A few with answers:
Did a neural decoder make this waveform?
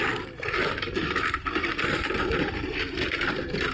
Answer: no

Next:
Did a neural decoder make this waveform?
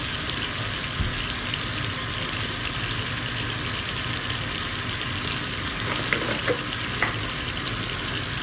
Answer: no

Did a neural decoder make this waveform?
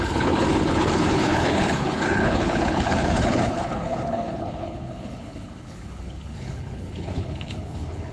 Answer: yes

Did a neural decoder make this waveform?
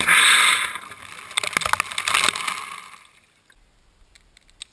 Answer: no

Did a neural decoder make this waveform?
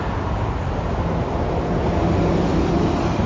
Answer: no